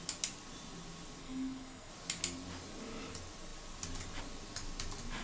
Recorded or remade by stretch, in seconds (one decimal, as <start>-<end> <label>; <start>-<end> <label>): 0.0-1.2 recorded; 1.2-1.9 remade; 1.9-5.2 recorded